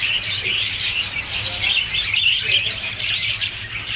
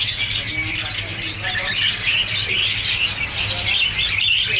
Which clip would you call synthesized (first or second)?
first